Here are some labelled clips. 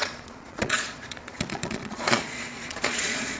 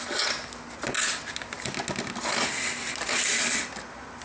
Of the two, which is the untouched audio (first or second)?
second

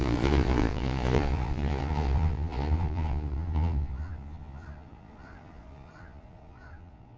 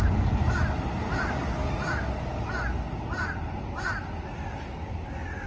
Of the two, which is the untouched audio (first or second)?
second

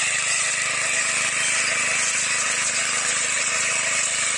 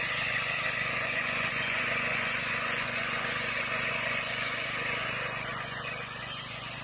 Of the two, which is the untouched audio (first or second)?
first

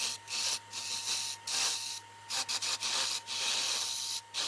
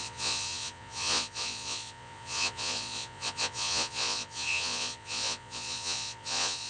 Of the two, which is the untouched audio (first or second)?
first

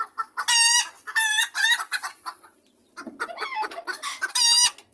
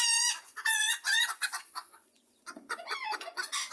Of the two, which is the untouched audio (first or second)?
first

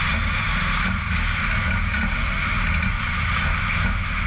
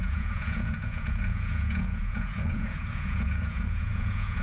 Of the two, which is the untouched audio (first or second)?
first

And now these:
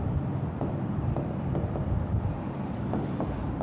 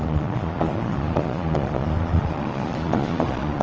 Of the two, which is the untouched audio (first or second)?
first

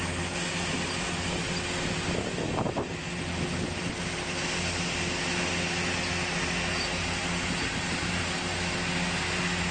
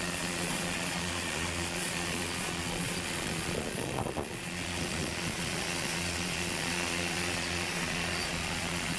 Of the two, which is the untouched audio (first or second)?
first